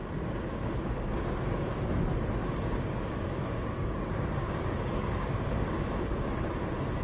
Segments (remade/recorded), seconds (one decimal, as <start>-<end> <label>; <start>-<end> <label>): 0.0-1.7 remade; 1.7-2.4 recorded; 2.4-6.6 remade; 6.6-7.0 recorded